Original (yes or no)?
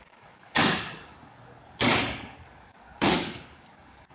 no